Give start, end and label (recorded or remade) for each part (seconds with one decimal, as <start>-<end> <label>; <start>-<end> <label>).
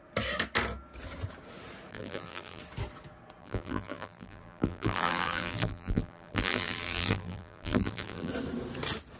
0.0-1.9 recorded; 1.9-2.6 remade; 2.6-3.4 recorded; 3.4-8.3 remade; 8.3-9.2 recorded